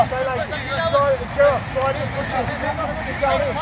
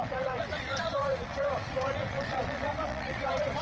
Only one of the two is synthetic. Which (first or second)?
second